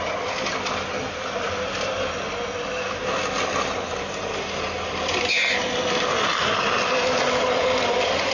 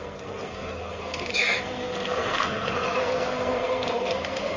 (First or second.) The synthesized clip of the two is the second